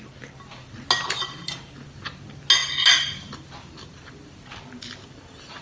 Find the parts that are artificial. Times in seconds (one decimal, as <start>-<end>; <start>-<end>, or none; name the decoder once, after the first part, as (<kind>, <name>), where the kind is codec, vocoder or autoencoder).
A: none